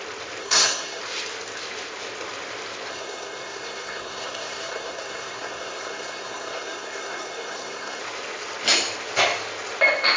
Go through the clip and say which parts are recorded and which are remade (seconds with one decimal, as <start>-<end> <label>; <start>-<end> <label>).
0.0-0.4 recorded; 0.4-1.0 remade; 1.0-2.9 recorded; 2.9-8.0 remade; 8.0-10.2 recorded